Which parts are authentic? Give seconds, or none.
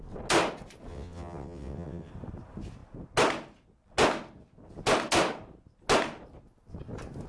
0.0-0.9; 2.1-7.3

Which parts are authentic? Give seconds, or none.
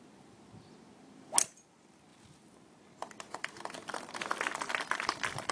0.0-5.5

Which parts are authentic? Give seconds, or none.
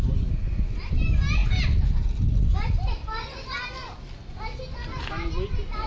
0.0-5.9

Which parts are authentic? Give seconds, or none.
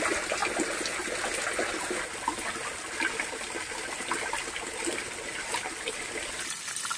0.0-7.0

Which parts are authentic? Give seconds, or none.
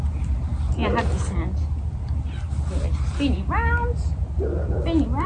0.0-5.3